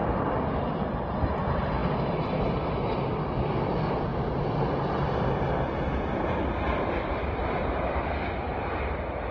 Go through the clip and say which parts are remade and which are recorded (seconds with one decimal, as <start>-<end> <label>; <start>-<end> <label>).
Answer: 0.0-0.5 recorded; 0.5-4.1 remade; 4.1-5.8 recorded; 5.8-9.3 remade